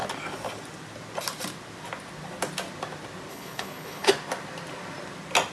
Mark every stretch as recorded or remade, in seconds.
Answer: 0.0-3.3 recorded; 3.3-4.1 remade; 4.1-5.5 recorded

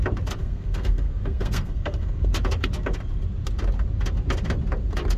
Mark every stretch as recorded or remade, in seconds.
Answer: 0.0-0.4 recorded; 0.4-2.3 remade; 2.3-5.2 recorded